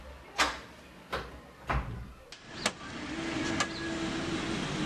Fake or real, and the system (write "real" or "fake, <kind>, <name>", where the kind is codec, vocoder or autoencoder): real